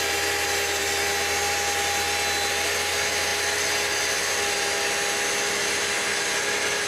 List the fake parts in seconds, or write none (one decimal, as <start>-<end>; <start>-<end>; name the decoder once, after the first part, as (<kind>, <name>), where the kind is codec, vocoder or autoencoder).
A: none